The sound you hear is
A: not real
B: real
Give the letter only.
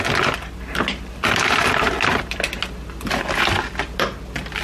B